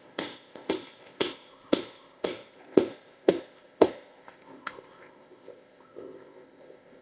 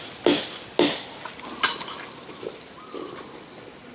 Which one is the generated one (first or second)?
first